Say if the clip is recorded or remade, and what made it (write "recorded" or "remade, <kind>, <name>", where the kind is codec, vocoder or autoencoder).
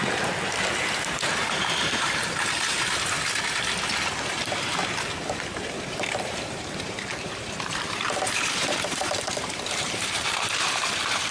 remade, vocoder, BigVGAN v2